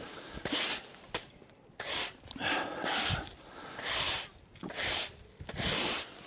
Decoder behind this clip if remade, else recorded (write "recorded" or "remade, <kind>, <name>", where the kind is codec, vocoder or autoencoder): recorded